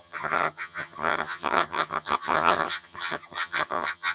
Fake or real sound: fake